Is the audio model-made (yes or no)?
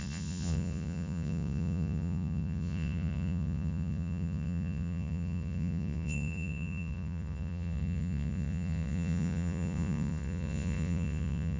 yes